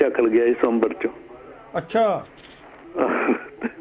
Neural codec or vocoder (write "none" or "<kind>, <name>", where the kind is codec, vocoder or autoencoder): none